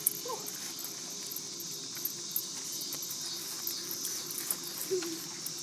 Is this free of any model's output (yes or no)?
yes